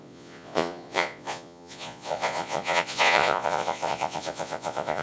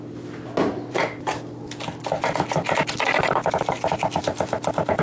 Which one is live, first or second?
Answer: second